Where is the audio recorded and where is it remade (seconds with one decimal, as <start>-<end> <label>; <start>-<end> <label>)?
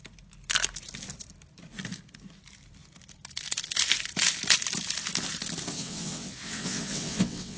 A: 0.0-5.7 recorded; 5.7-7.6 remade